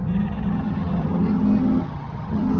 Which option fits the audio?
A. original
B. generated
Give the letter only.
B